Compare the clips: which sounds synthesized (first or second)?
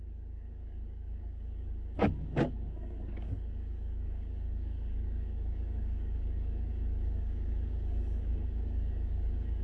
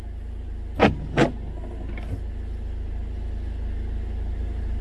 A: first